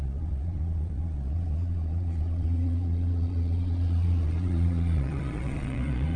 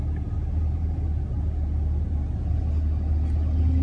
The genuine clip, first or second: second